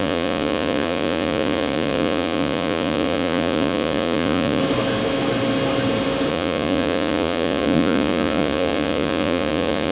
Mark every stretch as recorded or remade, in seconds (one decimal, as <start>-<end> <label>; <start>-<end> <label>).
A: 0.0-4.6 remade; 4.6-6.3 recorded; 6.3-9.9 remade